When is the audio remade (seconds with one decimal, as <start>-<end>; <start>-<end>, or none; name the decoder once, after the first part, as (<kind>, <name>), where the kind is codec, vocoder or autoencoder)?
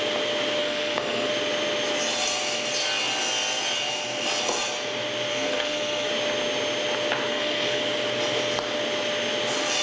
0.6-1.3 (codec, SNAC); 5.3-6.1; 7.3-7.8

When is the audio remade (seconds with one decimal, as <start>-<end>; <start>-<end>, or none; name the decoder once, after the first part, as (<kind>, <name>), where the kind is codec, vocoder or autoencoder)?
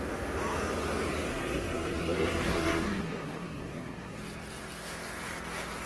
1.3-4.2 (codec, SNAC)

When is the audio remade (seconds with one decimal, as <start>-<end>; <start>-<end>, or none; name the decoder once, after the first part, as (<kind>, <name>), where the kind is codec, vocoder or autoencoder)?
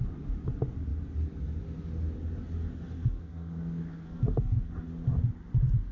3.0-4.7 (codec, SNAC)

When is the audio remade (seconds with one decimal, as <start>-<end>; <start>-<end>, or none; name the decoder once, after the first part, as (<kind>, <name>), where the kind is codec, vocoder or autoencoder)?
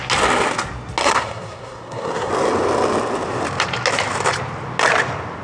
1.0-2.3 (codec, SNAC)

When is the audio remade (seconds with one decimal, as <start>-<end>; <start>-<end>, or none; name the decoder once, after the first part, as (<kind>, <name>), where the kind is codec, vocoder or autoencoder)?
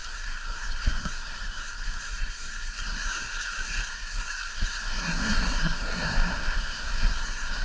0.0-7.6 (codec, SNAC)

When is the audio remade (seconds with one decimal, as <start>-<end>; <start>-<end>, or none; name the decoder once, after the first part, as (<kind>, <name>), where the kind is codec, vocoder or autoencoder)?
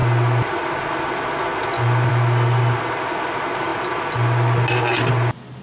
none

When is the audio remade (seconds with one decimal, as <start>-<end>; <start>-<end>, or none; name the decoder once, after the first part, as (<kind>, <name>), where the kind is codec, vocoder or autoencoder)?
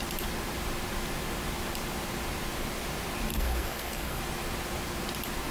3.3-4.2 (codec, SNAC)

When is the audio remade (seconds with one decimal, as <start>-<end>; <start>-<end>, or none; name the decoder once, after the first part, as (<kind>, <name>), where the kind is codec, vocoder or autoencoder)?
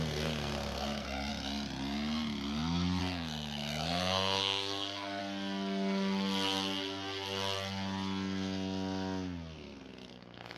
0.0-1.3 (codec, SNAC); 3.0-5.2; 10.1-10.6